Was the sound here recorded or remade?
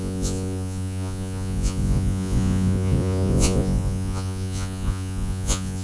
remade